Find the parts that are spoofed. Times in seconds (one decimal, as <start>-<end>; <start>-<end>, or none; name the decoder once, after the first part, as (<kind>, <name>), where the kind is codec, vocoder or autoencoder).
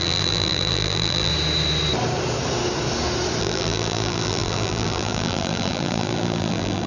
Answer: 0.0-1.3 (vocoder, BigVGAN v2); 3.4-6.9